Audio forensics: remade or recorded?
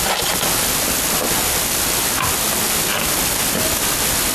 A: recorded